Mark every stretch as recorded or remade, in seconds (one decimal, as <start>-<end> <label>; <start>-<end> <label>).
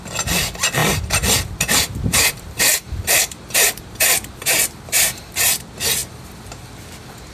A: 0.0-0.8 recorded; 0.8-5.2 remade; 5.2-7.3 recorded